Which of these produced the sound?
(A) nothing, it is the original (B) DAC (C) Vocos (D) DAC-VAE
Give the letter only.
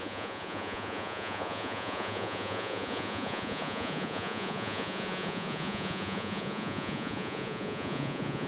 C